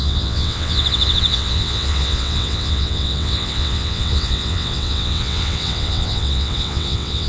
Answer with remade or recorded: remade